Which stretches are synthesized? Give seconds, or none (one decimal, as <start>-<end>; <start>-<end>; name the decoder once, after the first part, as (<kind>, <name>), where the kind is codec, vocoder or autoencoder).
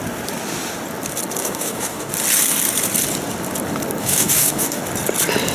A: 1.4-2.1 (codec, DAC); 4.0-4.8